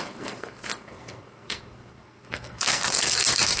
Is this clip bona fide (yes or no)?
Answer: no